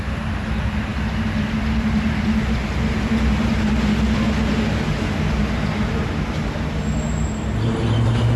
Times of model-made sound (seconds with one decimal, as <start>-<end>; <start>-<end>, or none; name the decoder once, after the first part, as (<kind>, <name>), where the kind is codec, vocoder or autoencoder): none